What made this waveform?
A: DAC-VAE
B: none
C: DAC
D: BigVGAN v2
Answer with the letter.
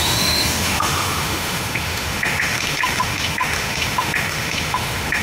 A